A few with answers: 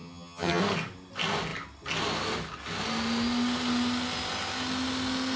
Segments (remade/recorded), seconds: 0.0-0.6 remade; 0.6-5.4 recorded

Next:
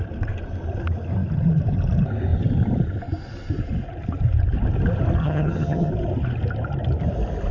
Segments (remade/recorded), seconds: 0.0-5.2 recorded; 5.2-5.9 remade; 5.9-7.5 recorded

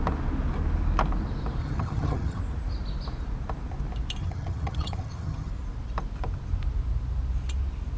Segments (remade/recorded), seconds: 0.0-1.6 recorded; 1.6-2.4 remade; 2.4-4.2 recorded; 4.2-5.5 remade; 5.5-8.0 recorded